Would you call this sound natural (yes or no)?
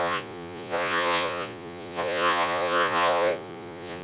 no